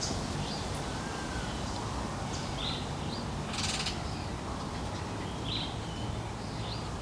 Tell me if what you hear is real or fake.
real